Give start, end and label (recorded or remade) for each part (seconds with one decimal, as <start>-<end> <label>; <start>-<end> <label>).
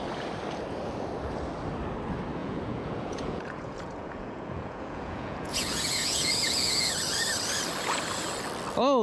0.0-2.4 recorded; 2.4-6.9 remade; 6.9-9.0 recorded